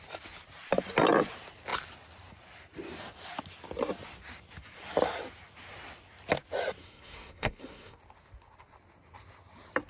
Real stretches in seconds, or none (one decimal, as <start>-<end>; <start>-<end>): 0.0-6.8; 8.0-9.9